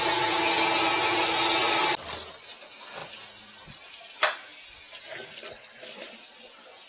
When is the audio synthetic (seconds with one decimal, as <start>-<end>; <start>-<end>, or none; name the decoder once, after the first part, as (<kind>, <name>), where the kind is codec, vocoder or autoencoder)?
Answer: none